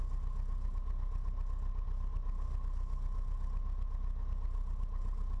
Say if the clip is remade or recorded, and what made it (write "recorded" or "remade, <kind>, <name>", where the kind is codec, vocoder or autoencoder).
recorded